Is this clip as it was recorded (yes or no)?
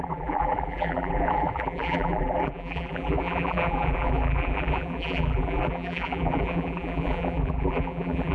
no